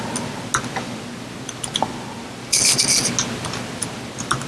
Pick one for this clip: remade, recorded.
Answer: recorded